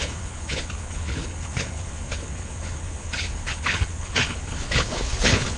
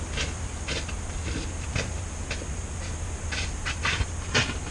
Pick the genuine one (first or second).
second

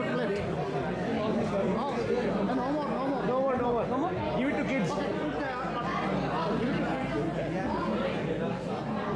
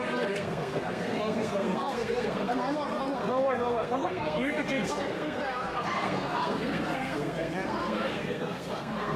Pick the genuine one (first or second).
first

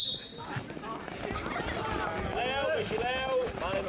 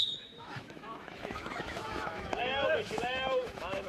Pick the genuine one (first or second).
first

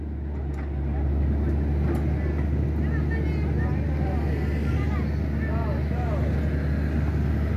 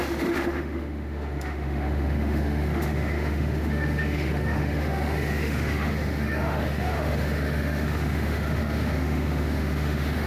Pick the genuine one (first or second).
first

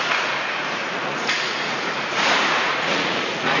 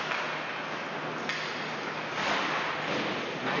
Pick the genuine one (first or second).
second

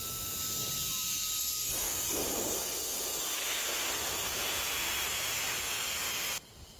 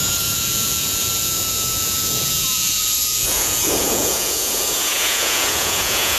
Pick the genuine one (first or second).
first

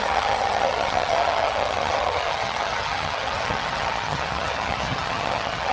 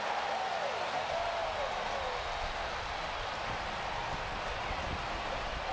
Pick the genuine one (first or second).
second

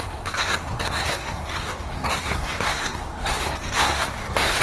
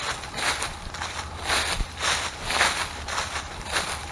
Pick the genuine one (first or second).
second